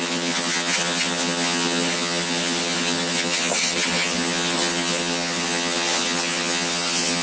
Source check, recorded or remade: remade